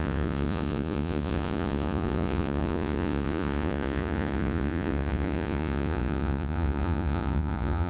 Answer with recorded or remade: remade